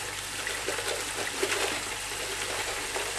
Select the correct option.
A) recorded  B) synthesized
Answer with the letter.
A